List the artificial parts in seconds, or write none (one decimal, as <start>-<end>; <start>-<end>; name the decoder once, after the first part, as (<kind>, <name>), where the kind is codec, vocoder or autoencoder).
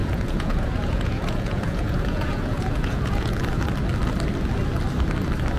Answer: 0.0-3.4 (vocoder, Vocos)